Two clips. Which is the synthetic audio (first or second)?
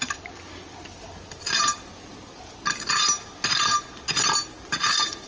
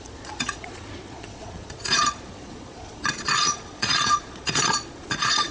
second